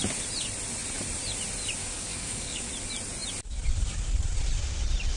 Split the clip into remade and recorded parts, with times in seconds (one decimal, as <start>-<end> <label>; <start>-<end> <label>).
0.0-1.8 recorded; 1.8-2.7 remade; 2.7-5.2 recorded